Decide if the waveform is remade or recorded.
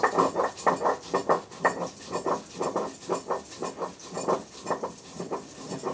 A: recorded